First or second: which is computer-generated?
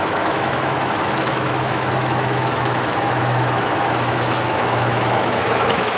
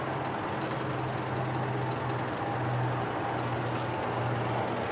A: first